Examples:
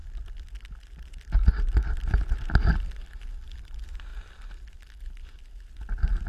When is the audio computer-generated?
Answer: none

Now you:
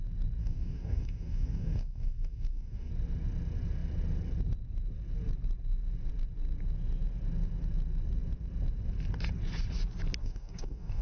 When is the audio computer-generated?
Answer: 0.4-2.9 (codec, DAC); 10.2-11.0

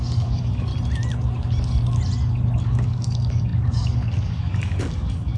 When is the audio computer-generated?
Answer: 0.0-0.7 (codec, DAC); 2.6-5.4

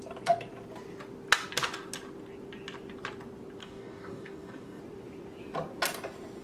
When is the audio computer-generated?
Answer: 3.6-4.8 (codec, DAC)

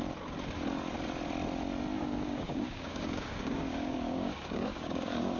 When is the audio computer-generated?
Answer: 2.0-5.4 (codec, DAC)